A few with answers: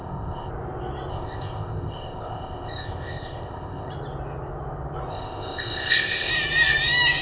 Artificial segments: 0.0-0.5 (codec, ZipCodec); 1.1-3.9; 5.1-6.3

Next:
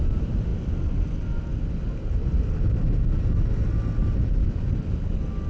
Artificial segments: none

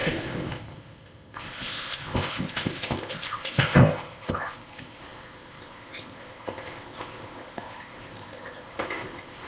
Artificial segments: 0.0-9.5 (codec, ZipCodec)